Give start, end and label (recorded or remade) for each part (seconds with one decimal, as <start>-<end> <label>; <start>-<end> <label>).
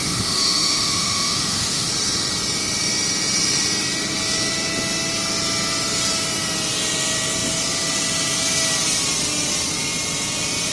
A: 0.0-1.9 remade; 1.9-10.7 recorded